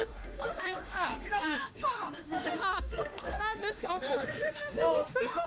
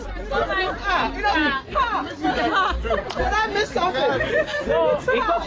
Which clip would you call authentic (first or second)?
second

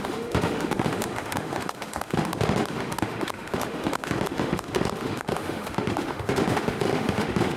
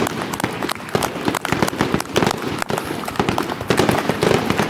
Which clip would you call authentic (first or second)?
second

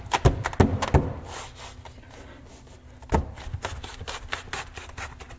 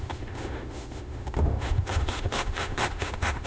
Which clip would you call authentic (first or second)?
first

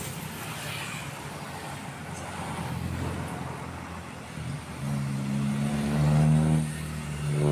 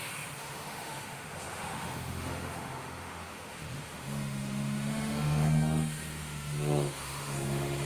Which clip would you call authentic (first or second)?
first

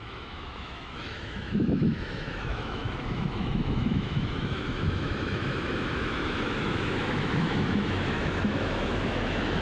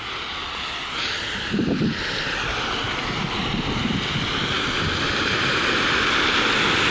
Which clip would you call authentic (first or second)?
second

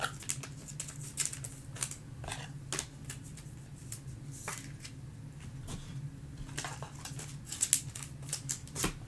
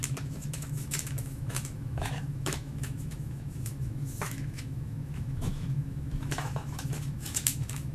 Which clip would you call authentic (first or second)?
first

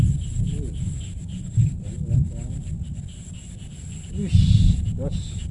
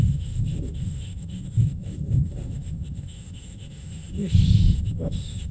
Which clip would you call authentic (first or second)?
first